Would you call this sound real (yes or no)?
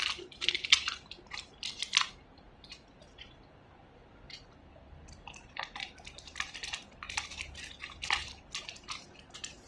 no